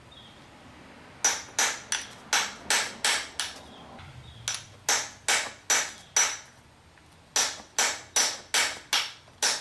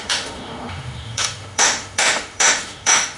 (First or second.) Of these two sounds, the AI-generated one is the second